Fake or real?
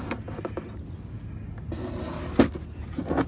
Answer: real